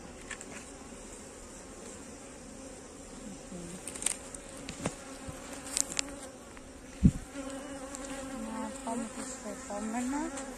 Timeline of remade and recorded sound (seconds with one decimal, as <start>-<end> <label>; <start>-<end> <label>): 0.0-10.6 recorded